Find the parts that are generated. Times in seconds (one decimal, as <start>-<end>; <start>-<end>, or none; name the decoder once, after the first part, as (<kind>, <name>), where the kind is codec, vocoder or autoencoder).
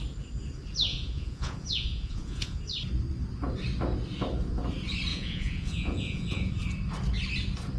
0.9-2.6 (vocoder, Vocos); 5.1-6.5